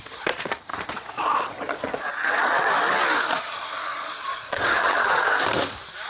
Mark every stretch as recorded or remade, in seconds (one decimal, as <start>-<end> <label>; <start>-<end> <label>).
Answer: 0.0-0.7 recorded; 0.7-2.7 remade; 2.7-3.9 recorded; 3.9-5.2 remade; 5.2-6.1 recorded